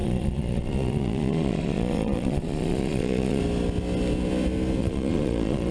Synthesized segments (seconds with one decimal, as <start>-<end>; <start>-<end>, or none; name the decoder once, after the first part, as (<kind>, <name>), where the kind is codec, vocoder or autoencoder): 0.0-3.4 (vocoder, Vocos); 4.8-5.7